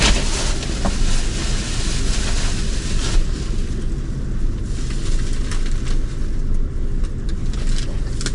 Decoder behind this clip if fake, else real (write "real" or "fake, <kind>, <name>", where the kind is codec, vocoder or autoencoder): real